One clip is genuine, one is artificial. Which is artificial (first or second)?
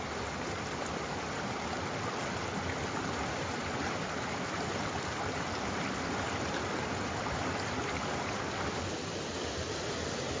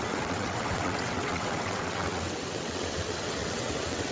second